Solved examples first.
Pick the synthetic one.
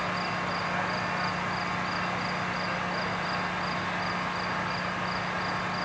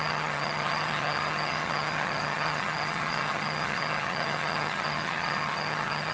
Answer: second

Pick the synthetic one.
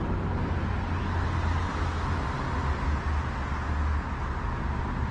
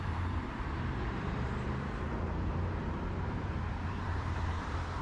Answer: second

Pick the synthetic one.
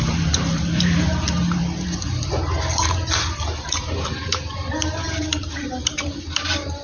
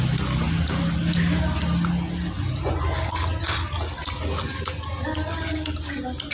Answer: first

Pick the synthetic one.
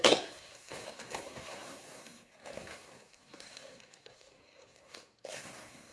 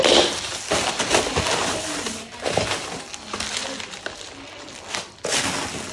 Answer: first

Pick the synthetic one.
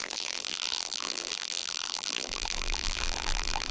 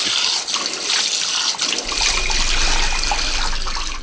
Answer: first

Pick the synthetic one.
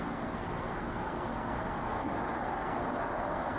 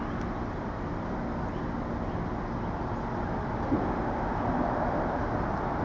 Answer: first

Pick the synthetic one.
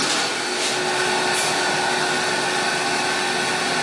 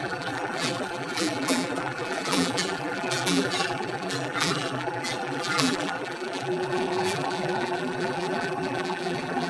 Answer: second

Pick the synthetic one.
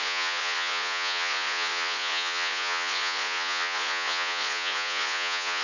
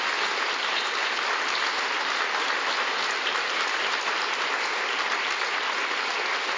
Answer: first